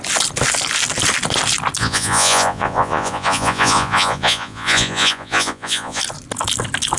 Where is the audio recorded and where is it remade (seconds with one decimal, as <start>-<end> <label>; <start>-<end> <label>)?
0.0-1.8 recorded; 1.8-6.0 remade; 6.0-7.0 recorded